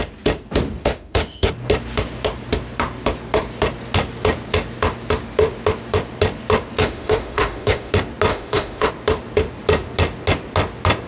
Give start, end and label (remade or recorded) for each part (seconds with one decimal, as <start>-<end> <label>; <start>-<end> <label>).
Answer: 0.0-0.8 recorded; 0.8-1.5 remade; 1.5-6.8 recorded; 6.8-7.9 remade; 7.9-8.3 recorded; 8.3-8.9 remade; 8.9-11.1 recorded